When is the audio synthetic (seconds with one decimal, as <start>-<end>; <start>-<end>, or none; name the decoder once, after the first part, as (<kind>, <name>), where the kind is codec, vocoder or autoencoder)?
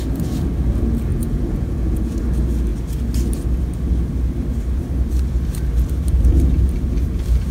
1.1-2.2 (vocoder, Vocos)